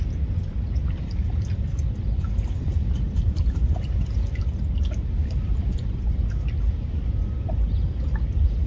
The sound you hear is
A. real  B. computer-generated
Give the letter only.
A